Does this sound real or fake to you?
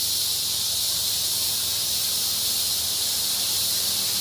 real